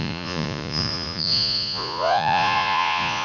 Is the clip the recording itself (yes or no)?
no